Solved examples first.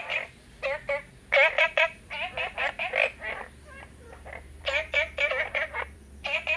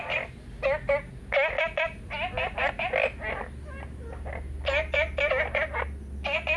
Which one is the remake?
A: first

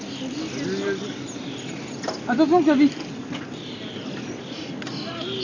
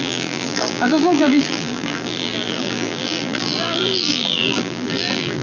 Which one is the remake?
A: second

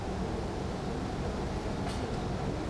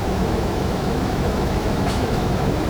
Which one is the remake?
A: second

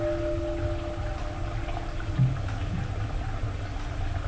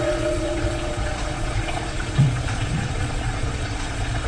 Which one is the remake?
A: second